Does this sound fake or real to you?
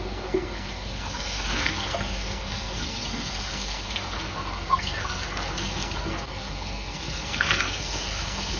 fake